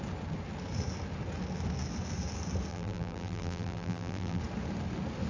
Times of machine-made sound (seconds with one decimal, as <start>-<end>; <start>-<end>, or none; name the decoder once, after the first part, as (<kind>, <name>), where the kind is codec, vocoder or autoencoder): 2.7-4.4 (vocoder, BigVGAN v2)